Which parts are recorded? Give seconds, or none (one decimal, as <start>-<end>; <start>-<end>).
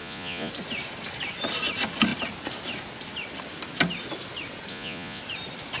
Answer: 0.5-4.7; 5.2-5.8